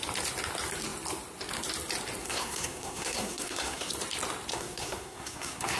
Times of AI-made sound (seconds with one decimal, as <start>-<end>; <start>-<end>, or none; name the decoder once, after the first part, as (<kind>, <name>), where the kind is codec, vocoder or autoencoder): 2.2-3.9 (codec, SNAC); 4.5-5.8